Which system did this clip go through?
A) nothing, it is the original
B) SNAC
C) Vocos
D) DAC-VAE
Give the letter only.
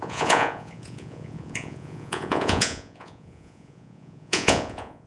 C